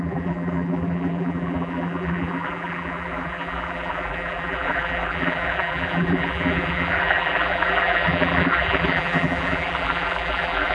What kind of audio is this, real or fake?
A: fake